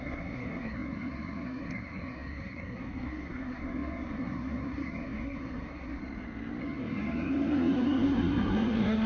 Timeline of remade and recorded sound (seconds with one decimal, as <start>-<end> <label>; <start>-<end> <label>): 0.0-6.0 remade; 6.0-6.6 recorded; 6.6-9.1 remade